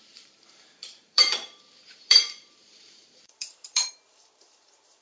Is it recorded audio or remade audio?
remade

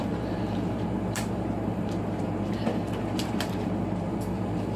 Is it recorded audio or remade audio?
remade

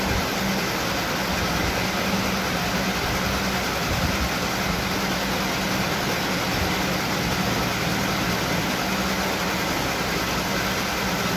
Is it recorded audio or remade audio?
recorded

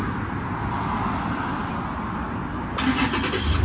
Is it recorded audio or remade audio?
recorded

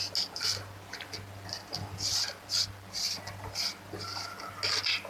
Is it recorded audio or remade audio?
recorded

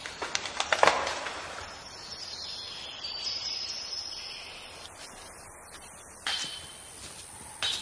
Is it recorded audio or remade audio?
recorded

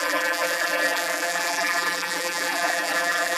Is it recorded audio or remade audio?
remade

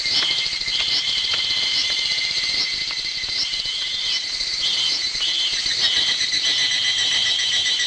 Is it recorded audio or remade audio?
remade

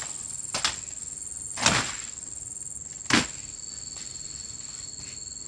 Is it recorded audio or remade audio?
recorded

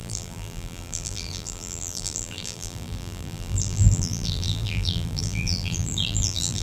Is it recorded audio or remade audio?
remade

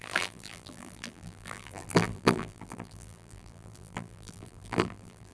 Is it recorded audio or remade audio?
remade